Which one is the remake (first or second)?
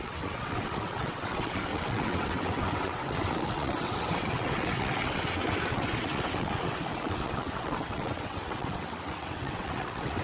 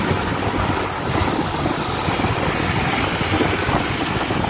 first